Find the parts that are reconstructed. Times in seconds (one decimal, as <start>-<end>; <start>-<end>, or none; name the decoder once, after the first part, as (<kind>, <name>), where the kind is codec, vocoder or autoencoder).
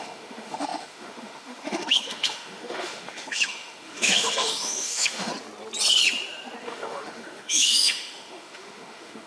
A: 0.0-5.3 (autoencoder, DAC-VAE); 6.6-9.3